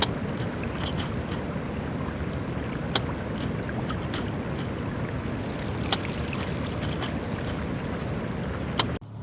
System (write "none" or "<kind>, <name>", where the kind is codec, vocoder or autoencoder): none